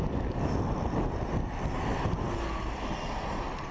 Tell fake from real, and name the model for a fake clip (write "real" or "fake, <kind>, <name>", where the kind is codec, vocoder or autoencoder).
real